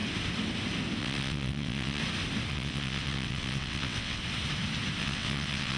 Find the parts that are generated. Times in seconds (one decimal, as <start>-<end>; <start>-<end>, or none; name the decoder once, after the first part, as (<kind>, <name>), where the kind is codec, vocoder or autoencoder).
1.0-2.0 (vocoder, WaveNeXt); 2.5-4.2; 5.0-5.8